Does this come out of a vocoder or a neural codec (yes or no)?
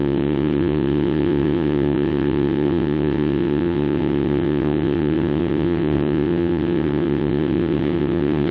yes